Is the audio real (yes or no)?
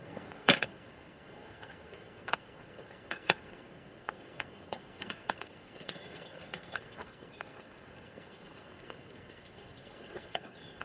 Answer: no